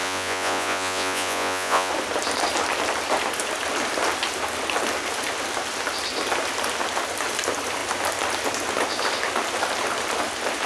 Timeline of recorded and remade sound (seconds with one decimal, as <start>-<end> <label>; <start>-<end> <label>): 0.0-1.9 remade; 1.9-10.7 recorded